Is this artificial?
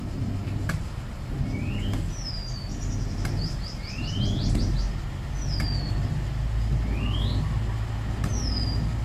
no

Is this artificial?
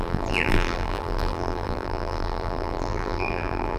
yes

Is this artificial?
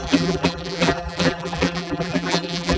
yes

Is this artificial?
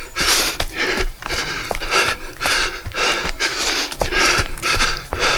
yes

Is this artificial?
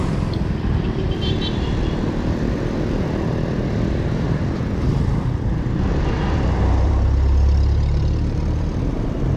yes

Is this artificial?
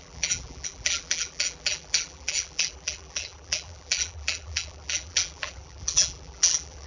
yes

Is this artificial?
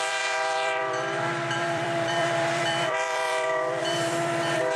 yes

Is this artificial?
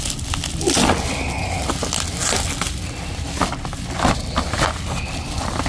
no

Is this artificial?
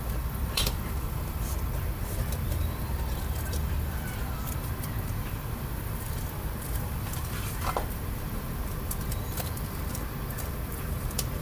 yes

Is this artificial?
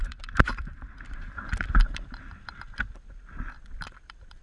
yes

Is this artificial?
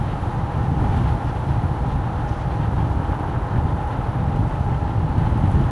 no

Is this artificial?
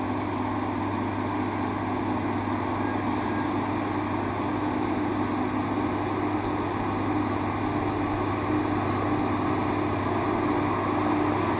no